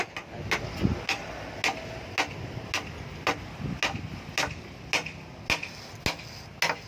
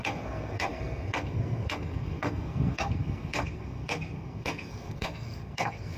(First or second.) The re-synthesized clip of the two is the second